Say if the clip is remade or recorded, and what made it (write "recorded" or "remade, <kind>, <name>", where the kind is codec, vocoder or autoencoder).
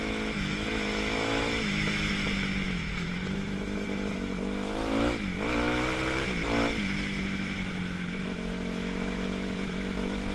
remade, autoencoder, DAC-VAE